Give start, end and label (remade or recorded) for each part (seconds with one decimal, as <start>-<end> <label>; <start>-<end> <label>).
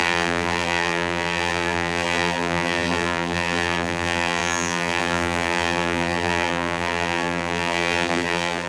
0.0-8.7 remade